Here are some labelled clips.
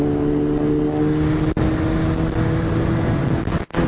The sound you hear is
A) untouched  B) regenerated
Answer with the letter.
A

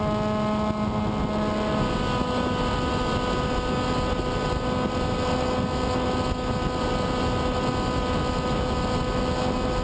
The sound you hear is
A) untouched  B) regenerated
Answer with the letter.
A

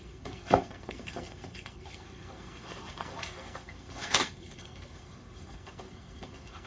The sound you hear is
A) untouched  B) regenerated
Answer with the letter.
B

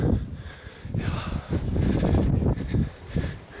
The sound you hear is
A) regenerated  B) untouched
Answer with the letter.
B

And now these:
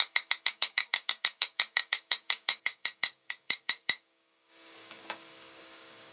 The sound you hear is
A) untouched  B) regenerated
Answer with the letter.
B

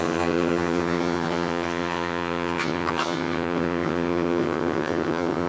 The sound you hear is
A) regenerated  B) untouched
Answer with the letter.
A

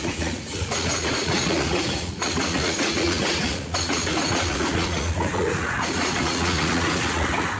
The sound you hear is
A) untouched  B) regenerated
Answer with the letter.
B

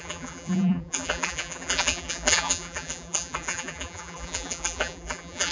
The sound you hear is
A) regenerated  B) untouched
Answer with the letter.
A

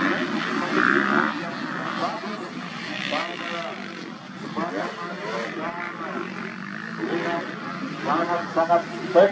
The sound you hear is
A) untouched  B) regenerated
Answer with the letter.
A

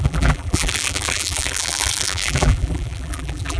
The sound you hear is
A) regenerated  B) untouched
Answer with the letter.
A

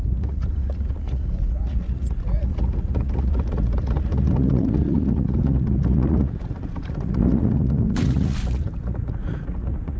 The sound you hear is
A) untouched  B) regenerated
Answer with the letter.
B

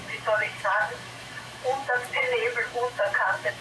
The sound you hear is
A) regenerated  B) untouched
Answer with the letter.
A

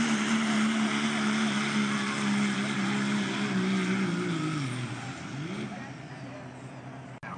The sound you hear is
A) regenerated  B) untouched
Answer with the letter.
B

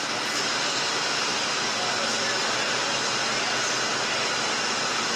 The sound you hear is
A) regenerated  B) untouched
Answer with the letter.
B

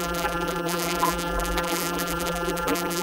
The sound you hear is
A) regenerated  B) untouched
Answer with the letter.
A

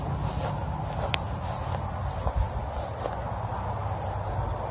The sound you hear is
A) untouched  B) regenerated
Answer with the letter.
A